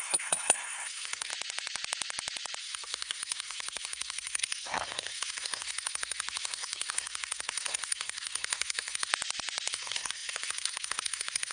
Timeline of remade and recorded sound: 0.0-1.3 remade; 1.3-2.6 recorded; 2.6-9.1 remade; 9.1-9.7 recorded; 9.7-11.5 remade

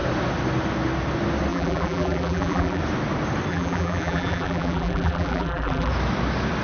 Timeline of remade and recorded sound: 0.0-1.5 recorded; 1.5-2.8 remade; 2.8-3.5 recorded; 3.5-5.9 remade; 5.9-6.6 recorded

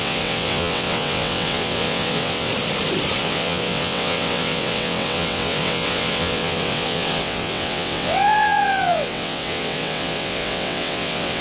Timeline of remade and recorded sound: 0.0-2.5 remade; 2.5-3.2 recorded; 3.2-11.4 remade

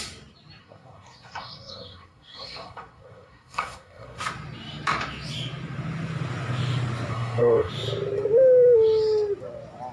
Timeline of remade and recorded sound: 0.0-0.6 recorded; 0.6-4.2 remade; 4.2-7.1 recorded; 7.1-7.7 remade; 7.7-9.9 recorded

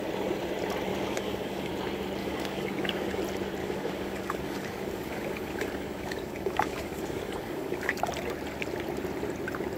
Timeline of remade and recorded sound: 0.0-0.9 recorded; 0.9-1.7 remade; 1.7-2.2 recorded; 2.2-3.2 remade; 3.2-3.6 recorded; 3.6-8.0 remade; 8.0-9.8 recorded

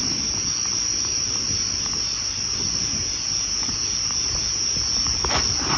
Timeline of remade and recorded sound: 0.0-5.8 recorded

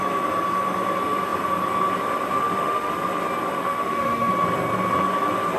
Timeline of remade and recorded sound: 0.0-2.4 recorded; 2.4-2.9 remade; 2.9-3.6 recorded; 3.6-4.3 remade; 4.3-5.6 recorded

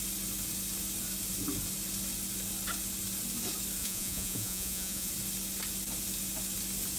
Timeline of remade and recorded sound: 0.0-3.8 recorded; 3.8-5.1 remade; 5.1-7.0 recorded